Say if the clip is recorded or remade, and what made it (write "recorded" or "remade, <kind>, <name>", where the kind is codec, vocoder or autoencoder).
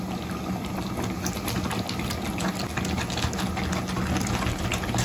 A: recorded